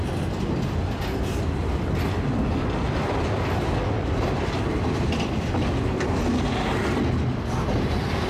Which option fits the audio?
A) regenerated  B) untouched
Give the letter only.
B